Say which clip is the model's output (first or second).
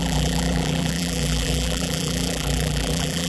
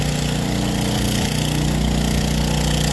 first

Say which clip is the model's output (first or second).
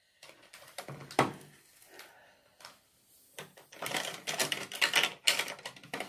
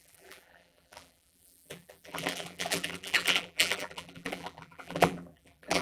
second